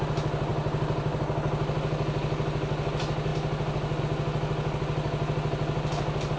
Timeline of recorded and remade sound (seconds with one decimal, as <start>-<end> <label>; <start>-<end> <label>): 0.0-0.5 recorded; 0.5-1.2 remade; 1.2-6.4 recorded